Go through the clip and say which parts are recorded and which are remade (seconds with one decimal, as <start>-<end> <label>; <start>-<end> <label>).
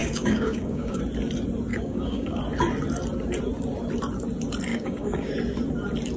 0.0-1.0 remade; 1.0-1.7 recorded; 1.7-2.4 remade; 2.4-4.7 recorded; 4.7-5.3 remade; 5.3-6.2 recorded